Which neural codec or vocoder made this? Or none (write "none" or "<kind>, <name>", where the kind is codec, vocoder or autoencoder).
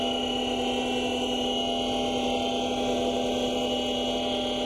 none